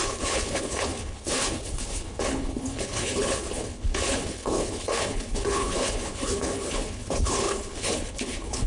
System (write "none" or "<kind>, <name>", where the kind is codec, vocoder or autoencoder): codec, HILCodec